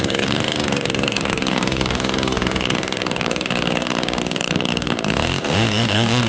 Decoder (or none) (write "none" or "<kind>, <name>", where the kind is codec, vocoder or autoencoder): codec, DAC